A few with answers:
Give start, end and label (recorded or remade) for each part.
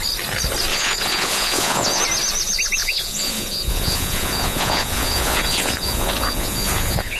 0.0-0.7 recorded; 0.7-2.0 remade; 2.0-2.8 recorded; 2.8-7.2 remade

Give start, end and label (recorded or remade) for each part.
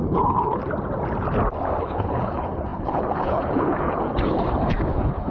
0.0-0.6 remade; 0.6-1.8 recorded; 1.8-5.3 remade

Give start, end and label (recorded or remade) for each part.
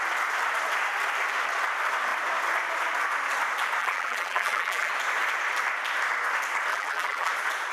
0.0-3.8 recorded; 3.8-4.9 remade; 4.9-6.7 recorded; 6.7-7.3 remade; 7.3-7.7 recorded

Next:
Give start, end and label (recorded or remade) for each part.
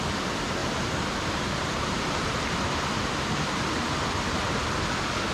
0.0-0.6 recorded; 0.6-3.8 remade; 3.8-5.3 recorded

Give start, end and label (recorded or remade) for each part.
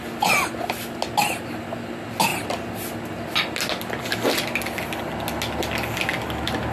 0.0-6.7 recorded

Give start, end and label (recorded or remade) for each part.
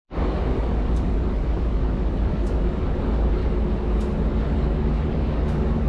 0.0-3.4 remade; 3.4-4.3 recorded; 4.3-5.9 remade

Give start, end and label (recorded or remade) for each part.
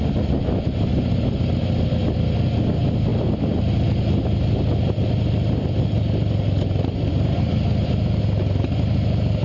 0.0-9.4 recorded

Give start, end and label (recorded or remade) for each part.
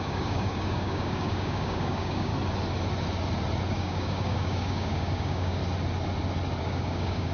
0.0-2.3 remade; 2.3-3.7 recorded; 3.7-5.6 remade; 5.6-6.6 recorded; 6.6-7.3 remade